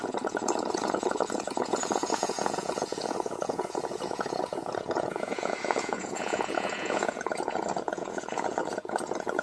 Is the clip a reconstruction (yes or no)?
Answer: yes